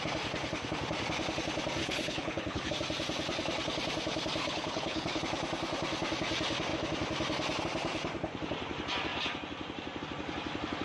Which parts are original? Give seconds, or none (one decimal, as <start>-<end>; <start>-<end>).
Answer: 0.0-1.8; 2.7-4.4; 5.2-10.8

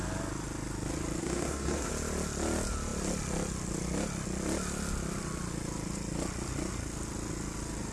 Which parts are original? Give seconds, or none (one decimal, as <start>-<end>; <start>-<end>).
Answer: 0.0-1.2; 1.9-7.9

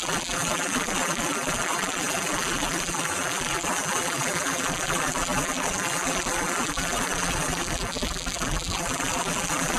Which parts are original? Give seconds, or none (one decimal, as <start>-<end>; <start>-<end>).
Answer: none

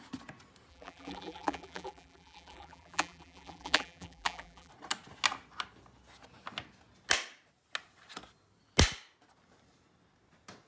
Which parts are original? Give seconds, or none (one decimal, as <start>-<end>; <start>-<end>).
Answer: 0.0-0.7; 4.7-10.7

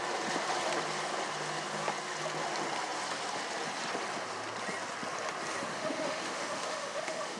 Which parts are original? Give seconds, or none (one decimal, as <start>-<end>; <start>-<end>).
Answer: 0.0-5.7